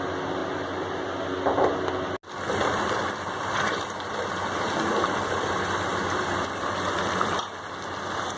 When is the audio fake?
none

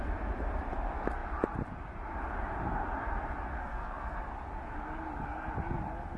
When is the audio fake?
3.6-4.2 (codec, SNAC)

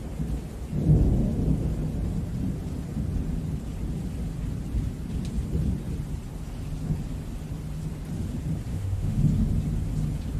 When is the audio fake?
8.7-9.2 (autoencoder, DAC-VAE)

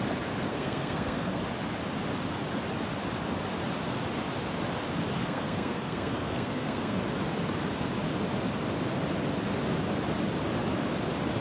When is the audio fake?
0.5-1.4 (codec, SNAC); 5.2-7.0

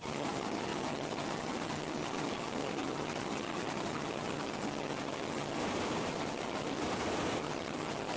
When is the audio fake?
0.0-5.6 (vocoder, HiFi-GAN); 6.1-6.8; 7.4-8.2